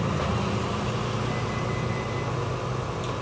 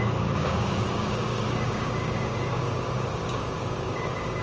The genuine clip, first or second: first